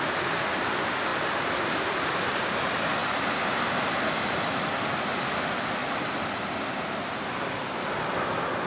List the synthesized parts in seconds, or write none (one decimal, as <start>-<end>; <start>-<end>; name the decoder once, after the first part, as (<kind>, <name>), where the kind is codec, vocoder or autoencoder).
none